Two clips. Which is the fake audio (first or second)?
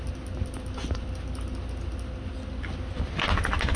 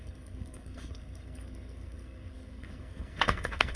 second